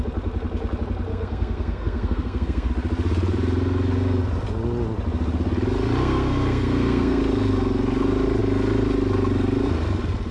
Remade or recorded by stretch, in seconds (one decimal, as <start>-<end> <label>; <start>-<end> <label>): 0.0-1.1 recorded; 1.1-2.7 remade; 2.7-6.0 recorded; 6.0-7.2 remade; 7.2-10.3 recorded